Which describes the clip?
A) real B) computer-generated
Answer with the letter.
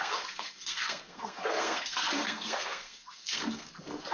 B